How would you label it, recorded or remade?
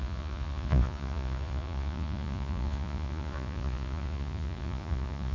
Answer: remade